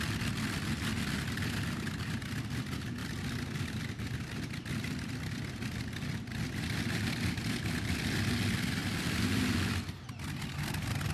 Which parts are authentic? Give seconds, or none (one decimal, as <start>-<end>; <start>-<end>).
0.0-3.0; 7.5-8.8; 10.4-11.1